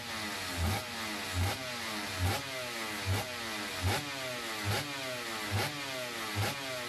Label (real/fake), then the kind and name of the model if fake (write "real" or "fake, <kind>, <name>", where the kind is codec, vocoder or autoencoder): real